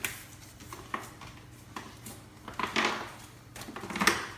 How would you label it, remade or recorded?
recorded